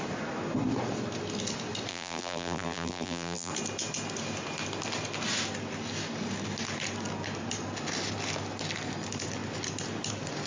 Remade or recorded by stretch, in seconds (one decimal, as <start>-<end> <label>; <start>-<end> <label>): 0.0-1.9 recorded; 1.9-3.5 remade; 3.5-10.5 recorded

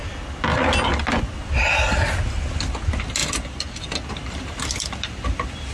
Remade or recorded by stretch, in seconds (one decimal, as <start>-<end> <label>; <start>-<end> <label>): 0.0-5.7 recorded